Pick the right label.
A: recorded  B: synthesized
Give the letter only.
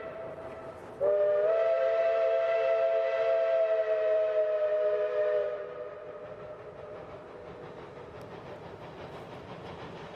A